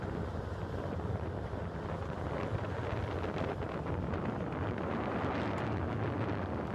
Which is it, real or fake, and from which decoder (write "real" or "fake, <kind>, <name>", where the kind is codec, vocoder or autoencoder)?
real